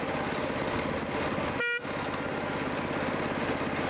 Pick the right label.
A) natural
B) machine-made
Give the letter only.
A